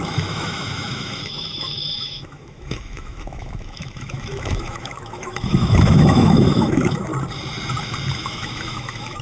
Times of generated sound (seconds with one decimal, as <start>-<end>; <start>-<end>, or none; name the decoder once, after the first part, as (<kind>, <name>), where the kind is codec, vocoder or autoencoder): 0.0-7.1 (autoencoder, DAC-VAE); 8.1-9.2